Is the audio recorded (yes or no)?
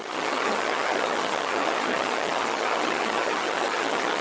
no